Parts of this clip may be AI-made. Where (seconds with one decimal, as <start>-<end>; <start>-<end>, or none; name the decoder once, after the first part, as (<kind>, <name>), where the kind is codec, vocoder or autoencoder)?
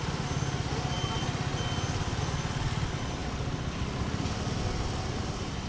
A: none